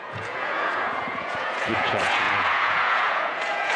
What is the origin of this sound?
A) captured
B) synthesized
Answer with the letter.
B